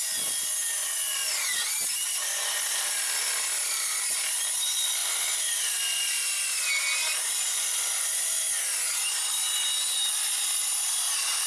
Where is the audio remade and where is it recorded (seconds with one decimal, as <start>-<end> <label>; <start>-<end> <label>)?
0.0-5.0 recorded; 5.0-6.3 remade; 6.3-7.0 recorded; 7.0-8.3 remade; 8.3-11.5 recorded